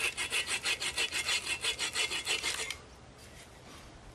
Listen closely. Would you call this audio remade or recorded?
recorded